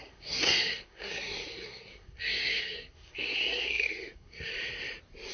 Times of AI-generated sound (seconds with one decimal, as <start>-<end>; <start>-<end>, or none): 0.0-4.5